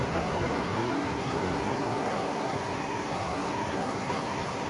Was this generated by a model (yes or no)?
yes